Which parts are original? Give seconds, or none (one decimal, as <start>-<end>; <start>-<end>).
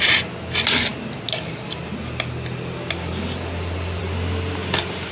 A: 0.0-5.1